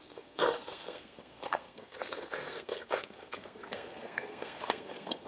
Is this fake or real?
fake